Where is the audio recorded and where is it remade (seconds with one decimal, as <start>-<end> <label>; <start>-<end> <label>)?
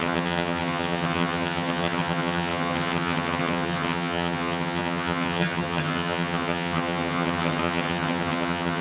0.0-8.8 remade